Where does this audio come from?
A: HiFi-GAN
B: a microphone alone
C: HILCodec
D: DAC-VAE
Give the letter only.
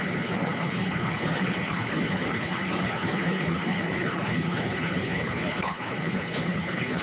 C